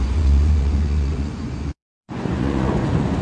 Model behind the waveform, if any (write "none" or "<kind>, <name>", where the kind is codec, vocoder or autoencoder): vocoder, Vocos